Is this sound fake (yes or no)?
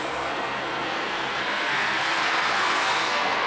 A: yes